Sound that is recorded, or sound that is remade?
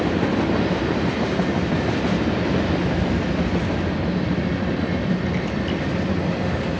recorded